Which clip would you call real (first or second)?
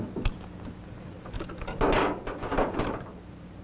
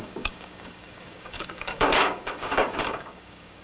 first